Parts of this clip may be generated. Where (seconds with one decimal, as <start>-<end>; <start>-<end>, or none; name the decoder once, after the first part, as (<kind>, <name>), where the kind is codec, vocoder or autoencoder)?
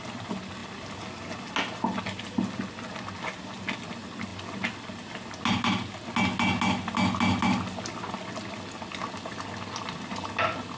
none